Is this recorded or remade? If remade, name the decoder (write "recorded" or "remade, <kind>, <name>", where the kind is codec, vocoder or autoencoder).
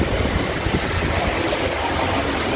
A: recorded